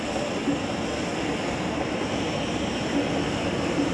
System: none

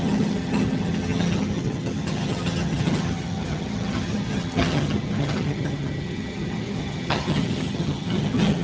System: vocoder, HiFi-GAN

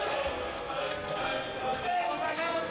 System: codec, SNAC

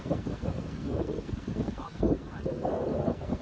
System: codec, SNAC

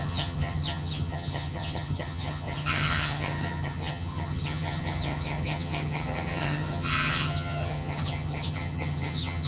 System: vocoder, HiFi-GAN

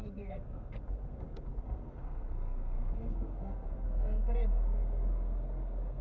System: codec, SNAC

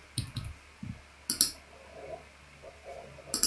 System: none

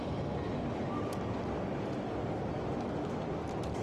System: none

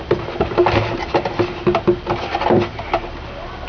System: none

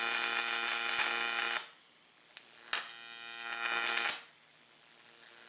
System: none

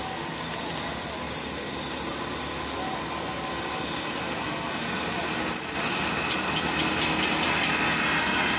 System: none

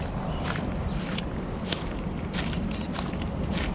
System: none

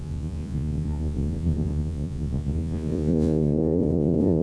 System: vocoder, Vocos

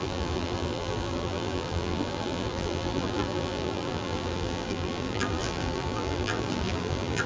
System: vocoder, BigVGAN v2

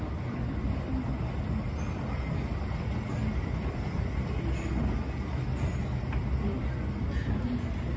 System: none